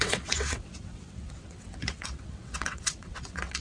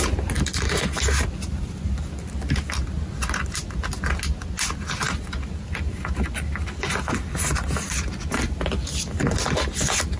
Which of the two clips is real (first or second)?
second